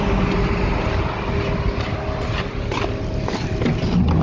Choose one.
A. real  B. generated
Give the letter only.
A